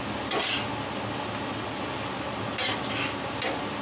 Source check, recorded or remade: recorded